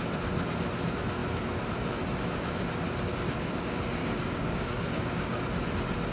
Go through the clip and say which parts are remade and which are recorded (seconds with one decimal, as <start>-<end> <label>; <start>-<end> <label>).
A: 0.0-4.0 recorded; 4.0-5.4 remade; 5.4-6.1 recorded